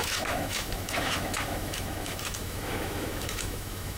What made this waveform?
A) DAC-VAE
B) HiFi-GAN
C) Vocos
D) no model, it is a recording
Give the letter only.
A